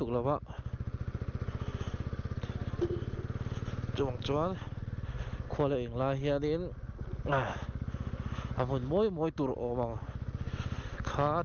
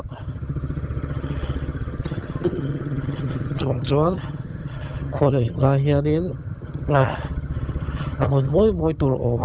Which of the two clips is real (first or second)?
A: first